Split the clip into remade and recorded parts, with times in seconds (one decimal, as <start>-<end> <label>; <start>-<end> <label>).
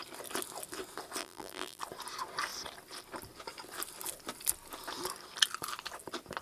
0.0-1.2 recorded; 1.2-1.8 remade; 1.8-6.4 recorded